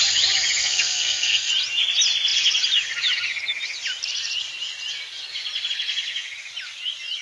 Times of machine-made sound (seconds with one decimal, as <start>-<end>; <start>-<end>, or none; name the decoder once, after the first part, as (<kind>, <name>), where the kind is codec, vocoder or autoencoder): 0.6-1.5 (codec, SNAC)